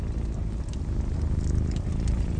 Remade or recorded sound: recorded